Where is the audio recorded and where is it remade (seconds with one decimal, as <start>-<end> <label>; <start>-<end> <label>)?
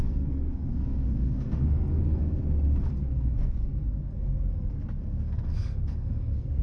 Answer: 0.0-2.4 remade; 2.4-2.9 recorded; 2.9-6.6 remade